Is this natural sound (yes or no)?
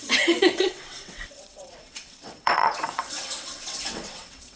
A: no